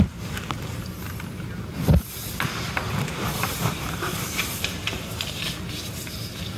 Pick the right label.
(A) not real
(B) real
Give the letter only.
A